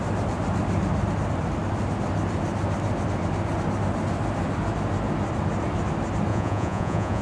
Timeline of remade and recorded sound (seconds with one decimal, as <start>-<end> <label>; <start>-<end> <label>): 0.0-6.3 recorded; 6.3-7.2 remade